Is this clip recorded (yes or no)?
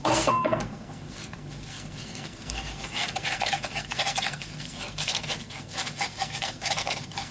no